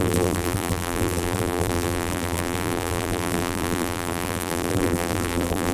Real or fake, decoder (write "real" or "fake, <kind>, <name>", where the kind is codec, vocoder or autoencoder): fake, vocoder, BigVGAN v2